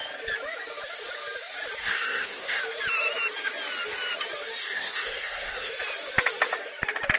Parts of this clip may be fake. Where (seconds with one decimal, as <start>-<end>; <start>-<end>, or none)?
1.8-2.6; 4.6-5.7